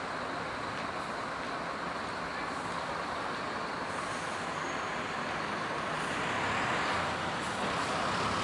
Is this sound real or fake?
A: real